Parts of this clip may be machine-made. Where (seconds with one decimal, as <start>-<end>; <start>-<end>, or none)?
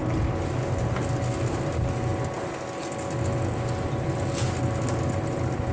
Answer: none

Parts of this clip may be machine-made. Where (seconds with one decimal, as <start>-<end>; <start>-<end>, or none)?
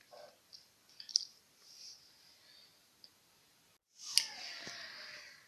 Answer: none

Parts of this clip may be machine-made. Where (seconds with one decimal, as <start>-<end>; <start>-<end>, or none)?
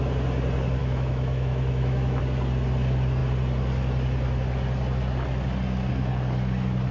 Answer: 0.8-2.2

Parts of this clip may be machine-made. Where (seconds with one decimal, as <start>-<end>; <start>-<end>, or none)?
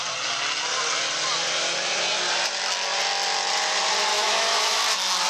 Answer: 4.1-4.8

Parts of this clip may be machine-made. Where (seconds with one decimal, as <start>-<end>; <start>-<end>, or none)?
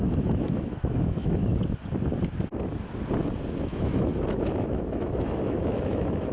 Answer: 0.0-1.4; 3.6-6.3